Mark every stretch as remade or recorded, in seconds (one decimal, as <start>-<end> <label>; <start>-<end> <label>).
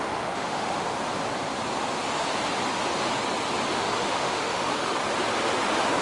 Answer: 0.0-0.9 remade; 0.9-3.7 recorded; 3.7-5.0 remade; 5.0-6.0 recorded